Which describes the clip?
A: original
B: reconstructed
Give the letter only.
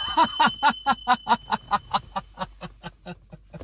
A